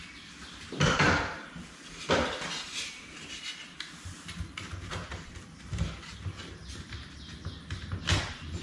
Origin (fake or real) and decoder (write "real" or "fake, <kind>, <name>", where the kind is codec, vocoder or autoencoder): fake, vocoder, BigVGAN v2